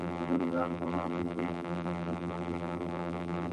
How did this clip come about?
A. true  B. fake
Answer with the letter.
B